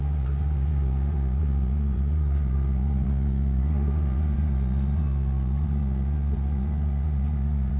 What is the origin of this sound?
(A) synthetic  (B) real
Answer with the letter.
A